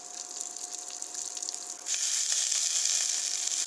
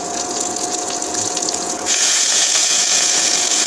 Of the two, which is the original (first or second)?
first